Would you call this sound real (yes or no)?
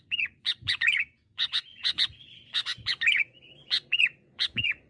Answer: no